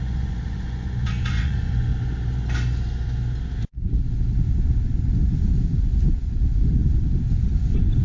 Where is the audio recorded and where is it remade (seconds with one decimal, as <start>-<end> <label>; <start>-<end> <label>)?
0.0-1.9 remade; 1.9-5.8 recorded; 5.8-6.8 remade; 6.8-7.6 recorded; 7.6-8.0 remade